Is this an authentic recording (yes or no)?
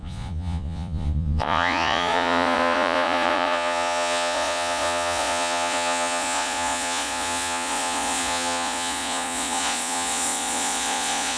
no